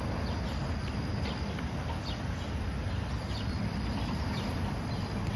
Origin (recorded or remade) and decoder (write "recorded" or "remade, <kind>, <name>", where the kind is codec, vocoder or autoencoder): recorded